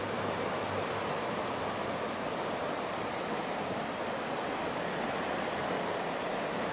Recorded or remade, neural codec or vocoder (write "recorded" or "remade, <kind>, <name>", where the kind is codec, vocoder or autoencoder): recorded